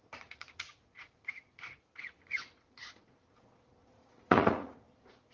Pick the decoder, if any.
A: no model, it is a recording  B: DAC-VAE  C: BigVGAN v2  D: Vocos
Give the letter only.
D